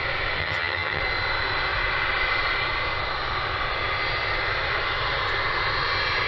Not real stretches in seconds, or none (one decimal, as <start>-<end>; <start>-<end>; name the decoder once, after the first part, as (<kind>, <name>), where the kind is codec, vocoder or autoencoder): 0.4-1.0 (vocoder, HiFi-GAN)